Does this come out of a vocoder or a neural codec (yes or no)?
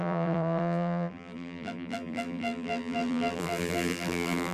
yes